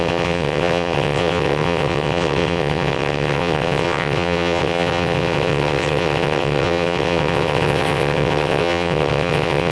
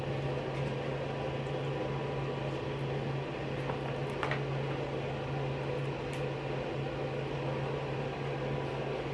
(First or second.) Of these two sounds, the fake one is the first